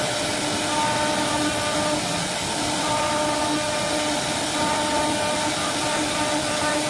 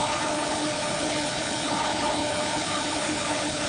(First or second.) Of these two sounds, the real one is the first